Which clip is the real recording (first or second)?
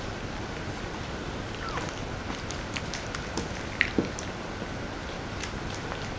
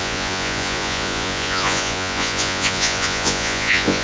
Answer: first